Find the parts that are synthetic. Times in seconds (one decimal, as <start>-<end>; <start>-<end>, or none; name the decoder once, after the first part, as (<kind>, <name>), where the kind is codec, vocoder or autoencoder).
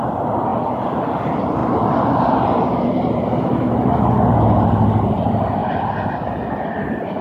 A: none